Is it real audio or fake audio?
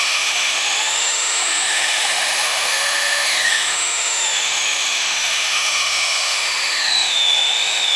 fake